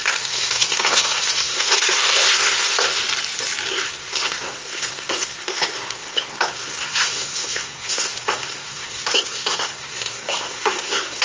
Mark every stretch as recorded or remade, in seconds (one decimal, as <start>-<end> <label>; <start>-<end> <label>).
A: 0.0-3.0 remade; 3.0-3.7 recorded; 3.7-11.2 remade